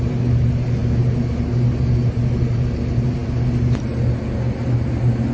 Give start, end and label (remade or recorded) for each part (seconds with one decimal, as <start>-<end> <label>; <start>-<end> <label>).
0.0-5.3 recorded